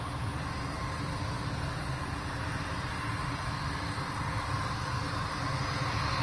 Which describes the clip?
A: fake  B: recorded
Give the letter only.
B